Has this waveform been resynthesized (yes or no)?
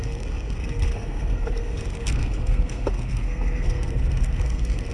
yes